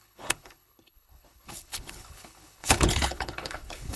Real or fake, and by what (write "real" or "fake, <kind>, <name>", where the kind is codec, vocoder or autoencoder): fake, codec, HILCodec